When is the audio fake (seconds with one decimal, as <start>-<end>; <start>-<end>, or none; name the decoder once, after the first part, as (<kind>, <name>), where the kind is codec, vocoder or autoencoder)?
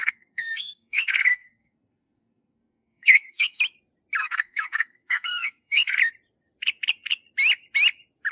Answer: 0.0-3.6 (codec, SNAC); 4.2-6.0